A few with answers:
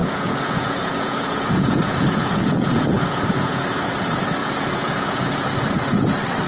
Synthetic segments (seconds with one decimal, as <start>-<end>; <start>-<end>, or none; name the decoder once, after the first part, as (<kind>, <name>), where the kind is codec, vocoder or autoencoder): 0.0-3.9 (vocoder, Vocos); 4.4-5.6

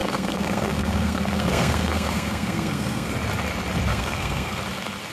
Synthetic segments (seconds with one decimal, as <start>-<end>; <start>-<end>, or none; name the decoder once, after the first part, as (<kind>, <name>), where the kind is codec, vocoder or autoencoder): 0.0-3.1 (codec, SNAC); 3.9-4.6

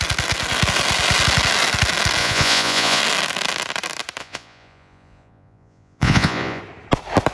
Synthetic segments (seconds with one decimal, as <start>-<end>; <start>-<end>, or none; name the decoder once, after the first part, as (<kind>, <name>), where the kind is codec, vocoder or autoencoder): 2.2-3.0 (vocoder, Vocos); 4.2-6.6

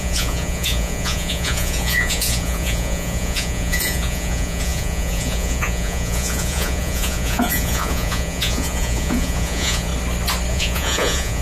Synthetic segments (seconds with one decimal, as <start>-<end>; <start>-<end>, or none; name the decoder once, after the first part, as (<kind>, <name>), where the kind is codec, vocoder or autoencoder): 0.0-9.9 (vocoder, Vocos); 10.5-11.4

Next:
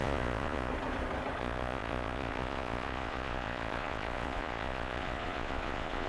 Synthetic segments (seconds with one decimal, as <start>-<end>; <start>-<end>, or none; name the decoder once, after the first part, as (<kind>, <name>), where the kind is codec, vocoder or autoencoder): 0.0-0.7 (vocoder, Vocos); 1.4-6.1

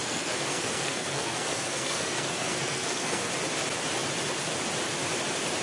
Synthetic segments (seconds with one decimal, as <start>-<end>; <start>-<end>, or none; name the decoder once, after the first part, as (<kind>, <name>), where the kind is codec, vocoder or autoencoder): 0.0-3.3 (codec, SNAC)